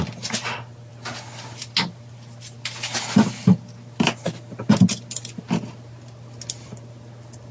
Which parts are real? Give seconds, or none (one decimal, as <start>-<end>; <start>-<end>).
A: 0.0-7.5